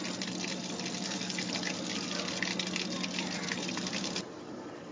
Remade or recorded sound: recorded